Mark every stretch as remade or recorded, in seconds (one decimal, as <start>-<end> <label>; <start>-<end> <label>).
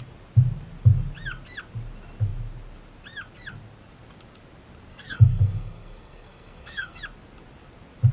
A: 0.0-4.9 recorded; 4.9-7.0 remade; 7.0-8.1 recorded